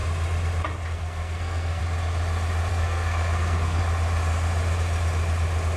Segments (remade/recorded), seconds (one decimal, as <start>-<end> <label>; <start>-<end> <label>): 0.0-0.9 recorded; 0.9-1.8 remade; 1.8-2.7 recorded; 2.7-3.8 remade; 3.8-5.8 recorded